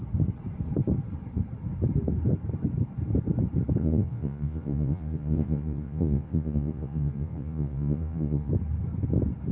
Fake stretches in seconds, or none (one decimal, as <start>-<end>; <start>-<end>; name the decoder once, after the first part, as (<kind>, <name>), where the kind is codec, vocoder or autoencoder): 3.8-8.5 (vocoder, Vocos)